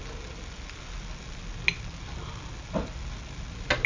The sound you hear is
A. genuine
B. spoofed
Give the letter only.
A